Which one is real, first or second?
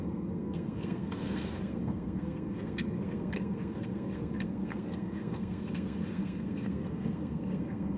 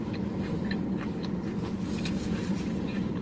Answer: second